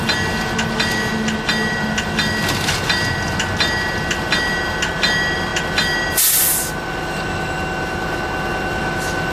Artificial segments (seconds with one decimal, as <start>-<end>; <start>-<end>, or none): none